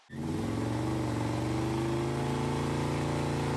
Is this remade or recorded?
recorded